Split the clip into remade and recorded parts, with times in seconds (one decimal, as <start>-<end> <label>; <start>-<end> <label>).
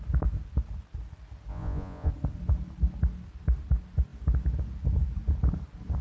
0.0-1.5 recorded; 1.5-2.1 remade; 2.1-6.0 recorded